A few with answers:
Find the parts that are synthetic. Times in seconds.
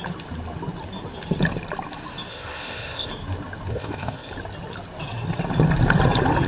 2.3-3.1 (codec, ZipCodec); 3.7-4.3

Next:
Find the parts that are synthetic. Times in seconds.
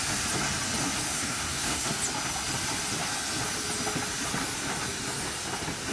1.1-1.9 (codec, SNAC)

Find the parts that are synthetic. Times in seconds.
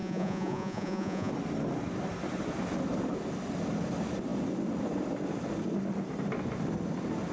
0.0-1.3 (vocoder, Vocos)